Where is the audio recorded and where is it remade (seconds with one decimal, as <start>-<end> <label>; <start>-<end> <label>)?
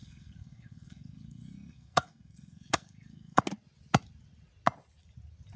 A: 0.0-3.4 remade; 3.4-5.6 recorded